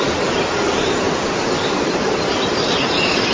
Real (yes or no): yes